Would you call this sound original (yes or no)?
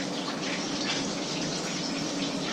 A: yes